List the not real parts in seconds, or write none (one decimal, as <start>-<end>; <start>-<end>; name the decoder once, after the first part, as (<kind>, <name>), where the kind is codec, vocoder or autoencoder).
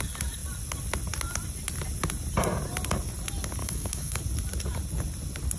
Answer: 3.6-4.2 (autoencoder, DAC-VAE)